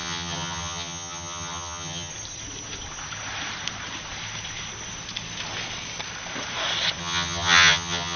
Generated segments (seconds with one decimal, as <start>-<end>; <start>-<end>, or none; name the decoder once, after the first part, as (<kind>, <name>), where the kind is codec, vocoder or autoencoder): 0.0-2.1 (vocoder, HiFi-GAN); 7.0-8.2